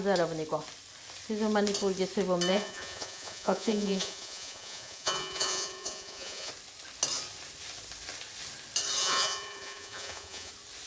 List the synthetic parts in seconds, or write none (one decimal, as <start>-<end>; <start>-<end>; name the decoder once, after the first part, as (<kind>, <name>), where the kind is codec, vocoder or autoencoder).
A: 2.5-6.5 (vocoder, Vocos); 9.0-10.5